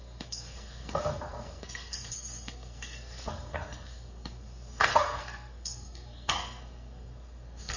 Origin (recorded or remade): remade